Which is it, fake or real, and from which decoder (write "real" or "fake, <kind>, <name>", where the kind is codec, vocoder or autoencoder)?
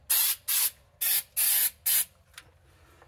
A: real